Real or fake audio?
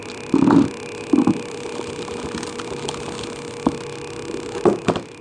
real